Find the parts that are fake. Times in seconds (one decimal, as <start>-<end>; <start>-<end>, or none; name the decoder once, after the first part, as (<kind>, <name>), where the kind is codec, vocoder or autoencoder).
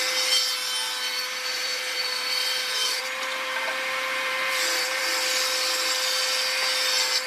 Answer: 1.1-5.0 (vocoder, BigVGAN v2)